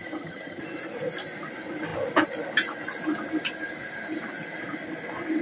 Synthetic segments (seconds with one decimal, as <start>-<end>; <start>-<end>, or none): 0.0-0.6